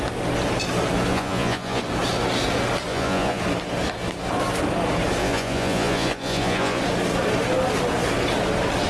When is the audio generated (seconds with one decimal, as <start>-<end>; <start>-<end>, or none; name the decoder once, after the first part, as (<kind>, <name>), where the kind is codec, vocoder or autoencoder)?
1.1-1.8 (vocoder, Vocos); 2.9-3.4; 5.2-6.8